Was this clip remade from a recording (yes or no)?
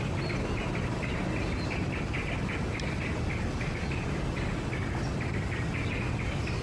no